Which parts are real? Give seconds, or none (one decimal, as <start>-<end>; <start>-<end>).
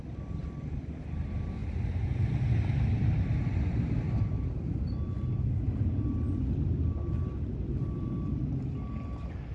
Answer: 0.0-1.6; 4.2-9.5